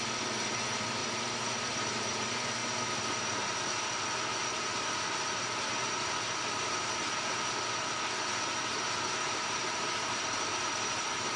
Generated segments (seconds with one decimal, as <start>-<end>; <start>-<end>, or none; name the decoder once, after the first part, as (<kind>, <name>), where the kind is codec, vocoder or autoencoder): 1.0-2.2 (vocoder, BigVGAN v2); 9.6-10.5